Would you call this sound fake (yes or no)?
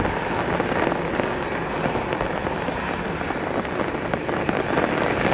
no